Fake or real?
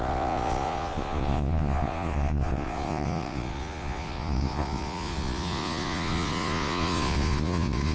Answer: fake